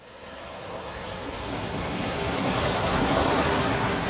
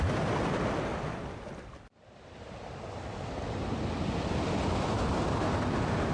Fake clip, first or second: first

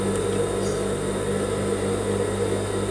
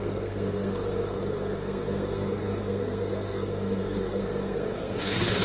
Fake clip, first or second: second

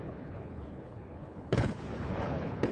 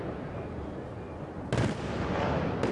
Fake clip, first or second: first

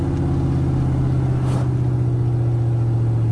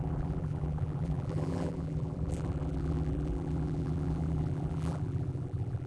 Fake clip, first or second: second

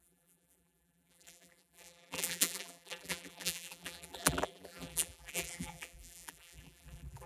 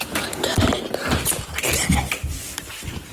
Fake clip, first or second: first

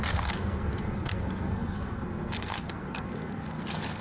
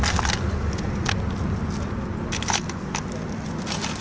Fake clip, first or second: first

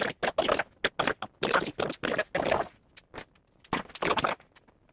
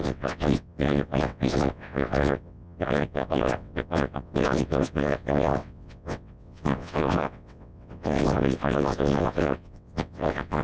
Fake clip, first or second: second